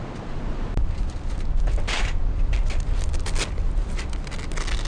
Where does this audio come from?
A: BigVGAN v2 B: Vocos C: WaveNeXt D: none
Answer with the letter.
D